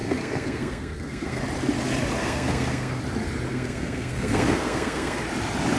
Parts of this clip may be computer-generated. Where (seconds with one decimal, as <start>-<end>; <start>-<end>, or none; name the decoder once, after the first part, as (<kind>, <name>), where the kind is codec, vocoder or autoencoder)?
0.0-1.4 (codec, SNAC); 2.2-3.0; 3.5-5.2